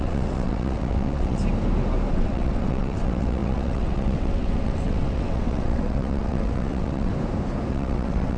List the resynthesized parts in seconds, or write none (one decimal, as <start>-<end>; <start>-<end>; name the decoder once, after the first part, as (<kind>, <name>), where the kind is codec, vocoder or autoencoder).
0.0-1.4 (vocoder, WaveNeXt); 2.1-7.1; 7.7-8.4